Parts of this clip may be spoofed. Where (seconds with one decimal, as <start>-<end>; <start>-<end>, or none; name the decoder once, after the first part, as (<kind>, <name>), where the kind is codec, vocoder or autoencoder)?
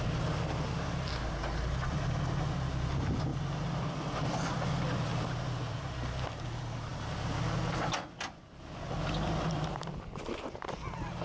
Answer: none